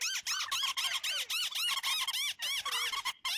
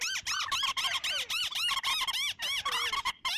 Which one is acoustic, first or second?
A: first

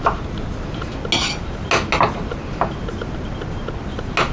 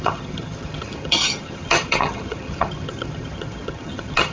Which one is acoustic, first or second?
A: first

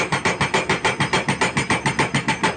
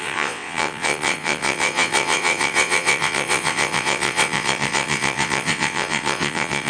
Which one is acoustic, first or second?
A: first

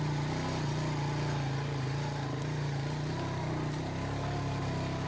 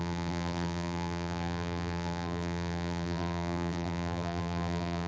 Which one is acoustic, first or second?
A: first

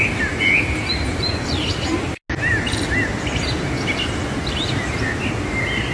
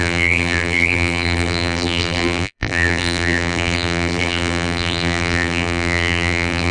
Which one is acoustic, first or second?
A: first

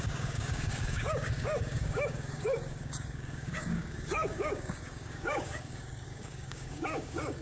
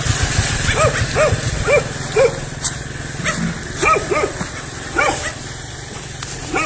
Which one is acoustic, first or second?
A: second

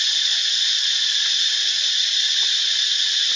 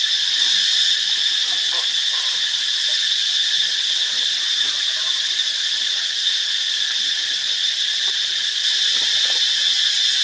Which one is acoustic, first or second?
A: second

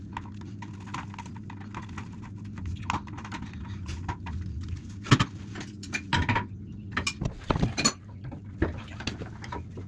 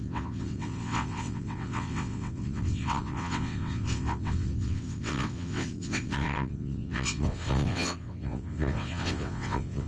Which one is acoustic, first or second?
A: first